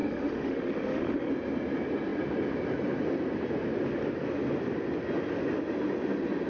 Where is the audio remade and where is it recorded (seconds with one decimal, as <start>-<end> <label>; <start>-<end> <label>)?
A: 0.0-1.3 remade; 1.3-6.5 recorded